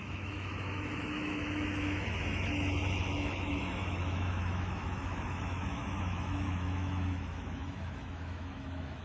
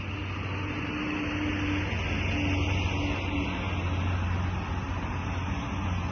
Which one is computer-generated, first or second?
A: first